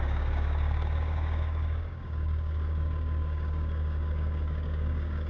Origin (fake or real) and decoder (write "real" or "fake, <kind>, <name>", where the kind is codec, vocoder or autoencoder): fake, codec, DAC